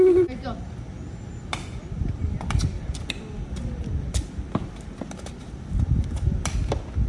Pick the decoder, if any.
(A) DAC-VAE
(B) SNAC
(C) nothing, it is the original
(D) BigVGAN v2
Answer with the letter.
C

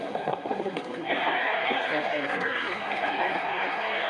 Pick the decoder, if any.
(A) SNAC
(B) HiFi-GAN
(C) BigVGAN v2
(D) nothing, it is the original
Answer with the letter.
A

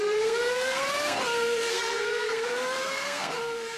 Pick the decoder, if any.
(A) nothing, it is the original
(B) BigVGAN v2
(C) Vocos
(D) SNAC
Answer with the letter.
D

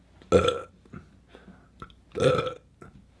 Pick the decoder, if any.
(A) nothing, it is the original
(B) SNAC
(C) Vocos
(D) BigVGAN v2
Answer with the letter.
A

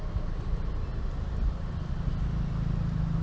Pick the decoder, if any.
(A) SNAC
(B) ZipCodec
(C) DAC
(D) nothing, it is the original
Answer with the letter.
D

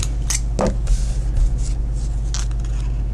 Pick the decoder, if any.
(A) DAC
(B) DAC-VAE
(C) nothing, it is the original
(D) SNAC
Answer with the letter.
C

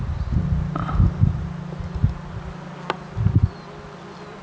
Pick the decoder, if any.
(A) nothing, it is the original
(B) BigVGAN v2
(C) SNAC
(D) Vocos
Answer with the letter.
A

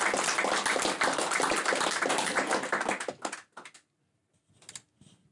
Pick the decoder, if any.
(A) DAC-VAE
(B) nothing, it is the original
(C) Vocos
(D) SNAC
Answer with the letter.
B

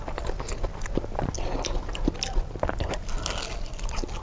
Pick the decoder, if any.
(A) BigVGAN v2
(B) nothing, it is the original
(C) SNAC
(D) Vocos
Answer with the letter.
B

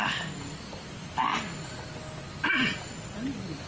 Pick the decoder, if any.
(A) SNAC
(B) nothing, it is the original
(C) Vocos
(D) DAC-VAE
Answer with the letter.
B